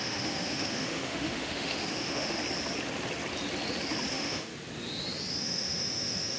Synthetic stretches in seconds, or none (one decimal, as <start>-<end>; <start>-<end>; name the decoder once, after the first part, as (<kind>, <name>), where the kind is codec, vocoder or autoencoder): 0.0-2.4 (autoencoder, DAC-VAE); 4.1-4.5; 5.4-6.4